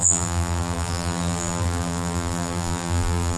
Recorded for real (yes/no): no